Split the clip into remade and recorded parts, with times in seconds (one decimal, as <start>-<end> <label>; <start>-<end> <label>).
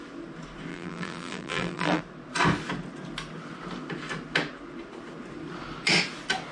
0.0-0.7 recorded; 0.7-2.0 remade; 2.0-6.5 recorded